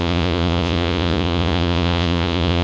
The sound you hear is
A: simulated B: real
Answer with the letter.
A